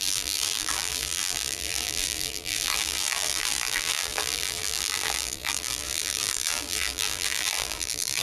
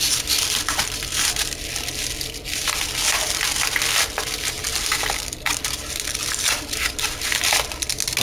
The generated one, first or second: first